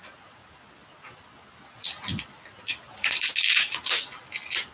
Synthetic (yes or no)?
no